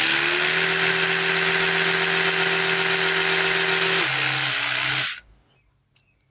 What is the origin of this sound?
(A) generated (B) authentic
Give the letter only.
B